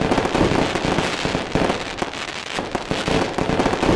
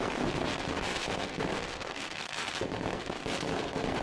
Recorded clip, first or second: first